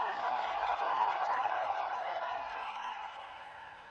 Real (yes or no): no